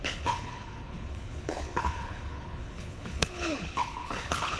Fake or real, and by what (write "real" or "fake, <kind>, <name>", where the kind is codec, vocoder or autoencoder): fake, codec, HILCodec